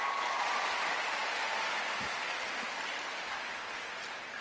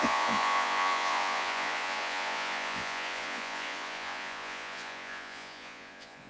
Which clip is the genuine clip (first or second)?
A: first